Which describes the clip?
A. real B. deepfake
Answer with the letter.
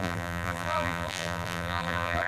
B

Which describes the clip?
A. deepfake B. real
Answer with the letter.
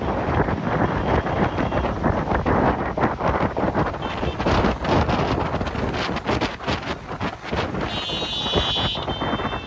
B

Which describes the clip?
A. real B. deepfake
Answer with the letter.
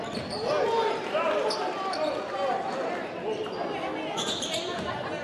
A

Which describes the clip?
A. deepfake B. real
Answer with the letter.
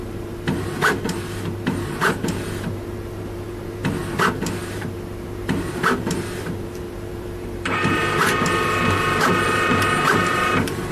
A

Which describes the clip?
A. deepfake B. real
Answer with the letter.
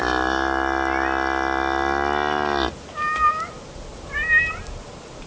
B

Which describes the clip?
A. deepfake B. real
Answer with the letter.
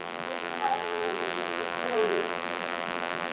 A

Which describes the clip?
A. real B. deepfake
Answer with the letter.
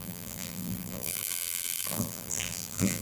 B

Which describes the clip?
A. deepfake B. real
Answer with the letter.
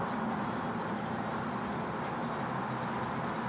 B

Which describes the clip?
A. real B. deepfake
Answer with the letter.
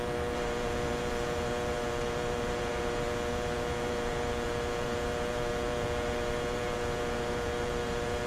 B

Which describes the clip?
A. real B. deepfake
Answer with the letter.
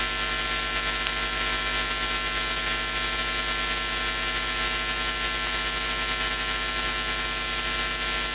A